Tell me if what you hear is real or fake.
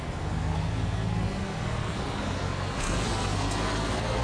fake